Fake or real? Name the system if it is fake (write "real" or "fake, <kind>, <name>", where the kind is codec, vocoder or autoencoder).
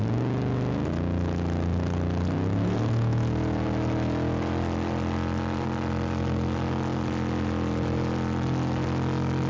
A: real